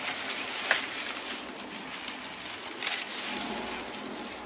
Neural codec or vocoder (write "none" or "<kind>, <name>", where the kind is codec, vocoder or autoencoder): none